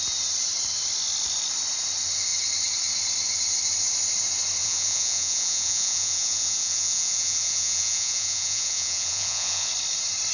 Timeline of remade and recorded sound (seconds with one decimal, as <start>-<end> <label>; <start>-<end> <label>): 0.0-4.6 recorded; 4.6-9.7 remade; 9.7-10.3 recorded